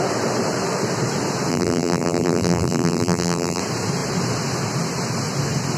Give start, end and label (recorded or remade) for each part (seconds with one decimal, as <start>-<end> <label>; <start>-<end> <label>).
0.0-1.5 recorded; 1.5-3.6 remade; 3.6-5.8 recorded